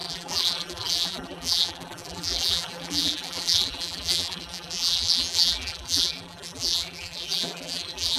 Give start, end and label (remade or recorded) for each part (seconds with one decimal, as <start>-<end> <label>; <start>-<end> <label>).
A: 0.0-8.2 remade